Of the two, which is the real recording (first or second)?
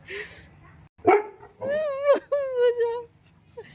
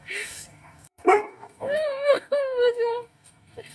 first